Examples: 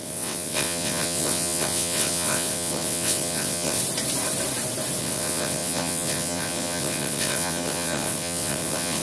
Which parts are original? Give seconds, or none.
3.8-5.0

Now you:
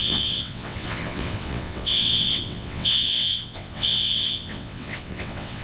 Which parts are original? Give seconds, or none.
none

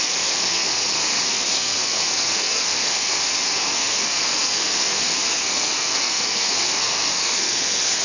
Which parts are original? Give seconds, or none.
none

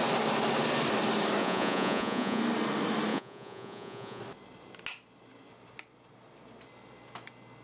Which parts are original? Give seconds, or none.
0.0-1.4; 2.4-3.1; 4.2-7.6

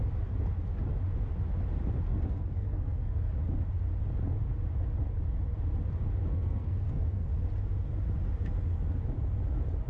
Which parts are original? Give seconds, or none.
0.0-2.1; 3.3-6.3; 7.3-9.9